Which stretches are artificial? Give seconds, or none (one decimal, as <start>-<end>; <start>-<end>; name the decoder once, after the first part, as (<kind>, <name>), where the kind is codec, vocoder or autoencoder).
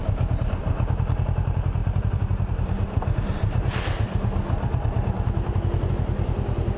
1.8-5.9 (vocoder, BigVGAN v2)